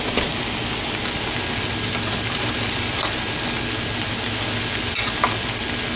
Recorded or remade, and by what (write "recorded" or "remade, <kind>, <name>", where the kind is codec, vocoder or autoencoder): recorded